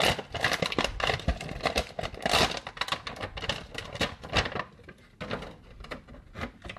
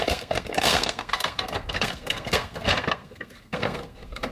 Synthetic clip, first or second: second